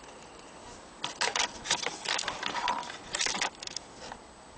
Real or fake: real